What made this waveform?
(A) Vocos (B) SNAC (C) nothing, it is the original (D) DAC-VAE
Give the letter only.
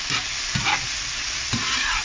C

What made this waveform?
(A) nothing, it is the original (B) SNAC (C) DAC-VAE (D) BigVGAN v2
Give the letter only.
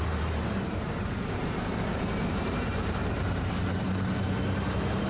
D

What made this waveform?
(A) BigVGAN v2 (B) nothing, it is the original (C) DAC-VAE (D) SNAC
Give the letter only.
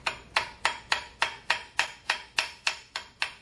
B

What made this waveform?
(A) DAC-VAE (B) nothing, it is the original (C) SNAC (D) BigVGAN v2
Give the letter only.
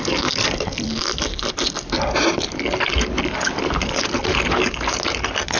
B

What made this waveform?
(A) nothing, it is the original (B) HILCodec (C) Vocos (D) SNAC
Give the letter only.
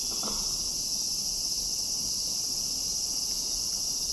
A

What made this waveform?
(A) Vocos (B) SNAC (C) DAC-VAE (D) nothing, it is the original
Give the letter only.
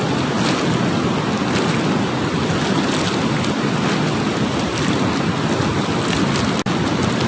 D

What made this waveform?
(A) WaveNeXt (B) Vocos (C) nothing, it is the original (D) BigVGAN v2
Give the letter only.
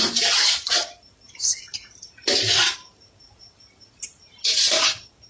D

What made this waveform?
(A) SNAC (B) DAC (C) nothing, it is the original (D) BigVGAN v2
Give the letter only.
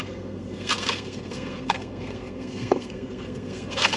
A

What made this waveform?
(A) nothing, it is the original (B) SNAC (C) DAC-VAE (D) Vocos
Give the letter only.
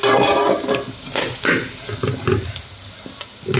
A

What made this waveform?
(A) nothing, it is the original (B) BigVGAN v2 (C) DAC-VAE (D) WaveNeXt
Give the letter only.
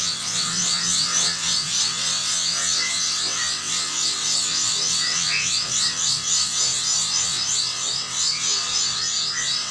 D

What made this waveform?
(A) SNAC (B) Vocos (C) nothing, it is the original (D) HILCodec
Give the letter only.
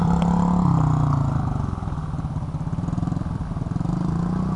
C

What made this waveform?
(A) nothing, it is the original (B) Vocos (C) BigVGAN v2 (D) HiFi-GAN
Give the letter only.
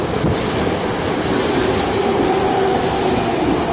A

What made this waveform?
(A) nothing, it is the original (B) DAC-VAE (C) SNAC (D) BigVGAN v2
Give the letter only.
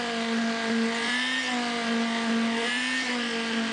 A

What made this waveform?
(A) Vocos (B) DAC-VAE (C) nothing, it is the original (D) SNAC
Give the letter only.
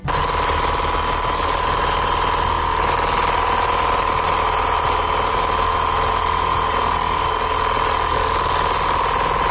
C